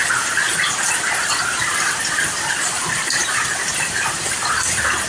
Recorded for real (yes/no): yes